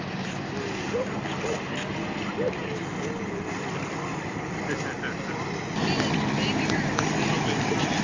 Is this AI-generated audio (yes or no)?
no